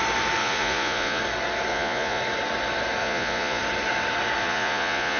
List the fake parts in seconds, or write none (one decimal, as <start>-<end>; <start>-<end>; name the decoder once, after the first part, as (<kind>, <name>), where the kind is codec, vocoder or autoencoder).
0.4-1.2 (vocoder, Vocos); 1.7-2.2; 3.0-3.6; 4.4-5.2